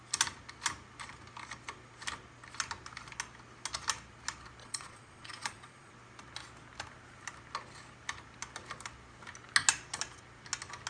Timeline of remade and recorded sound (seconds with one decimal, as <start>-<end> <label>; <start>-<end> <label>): 0.0-4.6 recorded; 4.6-5.9 remade; 5.9-10.9 recorded